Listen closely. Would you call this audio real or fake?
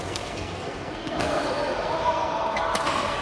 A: fake